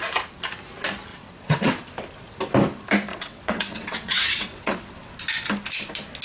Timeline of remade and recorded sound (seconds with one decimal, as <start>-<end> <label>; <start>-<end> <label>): 0.0-1.1 recorded; 1.1-1.7 remade; 1.7-3.1 recorded; 3.1-5.1 remade; 5.1-6.2 recorded